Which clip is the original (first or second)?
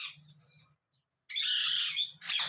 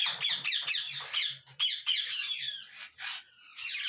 first